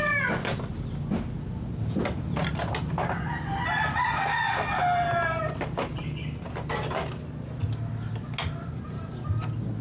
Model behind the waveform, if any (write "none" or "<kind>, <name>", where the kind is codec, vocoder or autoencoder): none